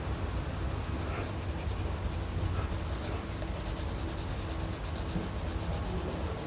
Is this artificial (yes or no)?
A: no